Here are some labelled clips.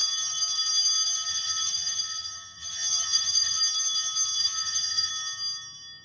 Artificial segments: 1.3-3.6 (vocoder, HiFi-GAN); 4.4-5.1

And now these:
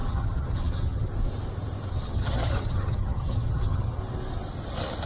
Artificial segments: 0.0-1.1 (vocoder, HiFi-GAN); 1.9-4.0

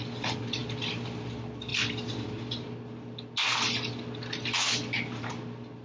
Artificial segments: none

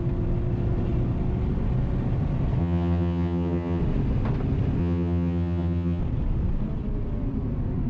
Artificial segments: 2.6-3.8 (vocoder, HiFi-GAN); 4.8-6.0